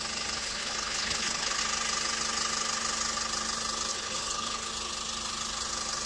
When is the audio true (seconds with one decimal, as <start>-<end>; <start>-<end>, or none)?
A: 0.0-0.4; 1.6-3.9; 4.7-6.1